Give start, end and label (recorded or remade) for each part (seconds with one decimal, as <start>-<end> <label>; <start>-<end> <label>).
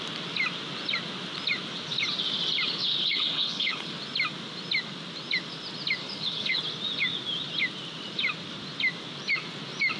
0.0-3.0 recorded; 3.0-3.9 remade; 3.9-6.0 recorded; 6.0-6.6 remade; 6.6-10.0 recorded